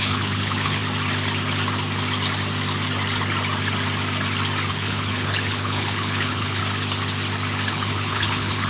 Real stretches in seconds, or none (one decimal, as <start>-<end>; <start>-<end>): 0.8-4.7; 6.6-7.7